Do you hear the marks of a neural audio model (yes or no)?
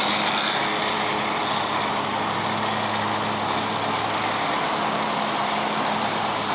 no